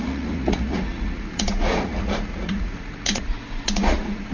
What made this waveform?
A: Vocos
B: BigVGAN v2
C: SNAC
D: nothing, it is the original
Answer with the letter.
A